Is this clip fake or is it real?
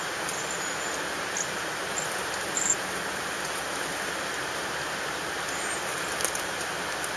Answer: real